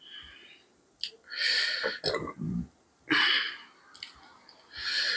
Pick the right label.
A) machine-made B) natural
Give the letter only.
B